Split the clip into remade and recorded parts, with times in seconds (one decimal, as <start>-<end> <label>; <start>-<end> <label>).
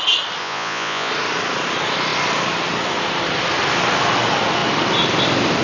0.0-0.4 recorded; 0.4-1.1 remade; 1.1-5.6 recorded